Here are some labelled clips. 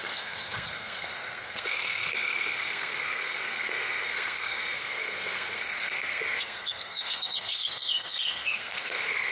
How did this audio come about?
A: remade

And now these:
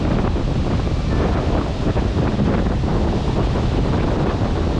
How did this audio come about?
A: recorded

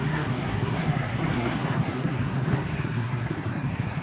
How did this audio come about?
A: remade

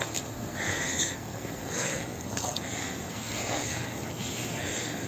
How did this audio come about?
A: remade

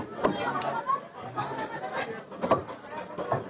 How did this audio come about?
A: recorded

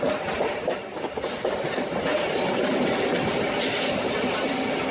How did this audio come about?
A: recorded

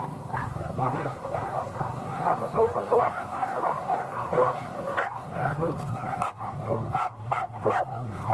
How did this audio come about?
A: remade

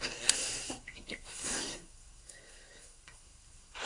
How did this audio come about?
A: remade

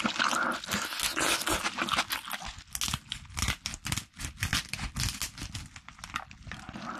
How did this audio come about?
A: recorded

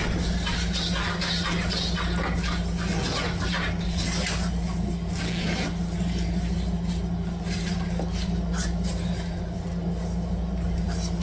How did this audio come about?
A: recorded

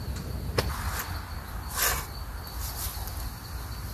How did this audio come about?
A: recorded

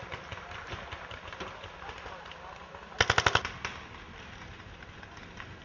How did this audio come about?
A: recorded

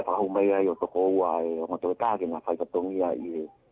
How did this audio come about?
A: recorded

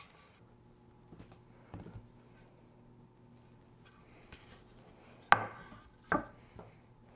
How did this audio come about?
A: recorded